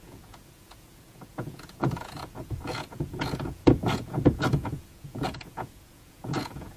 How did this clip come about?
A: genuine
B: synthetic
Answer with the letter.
B